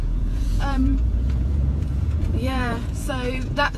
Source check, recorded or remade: remade